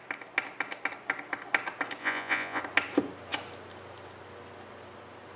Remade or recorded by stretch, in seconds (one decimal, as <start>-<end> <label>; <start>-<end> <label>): 0.0-2.0 recorded; 2.0-2.6 remade; 2.6-5.4 recorded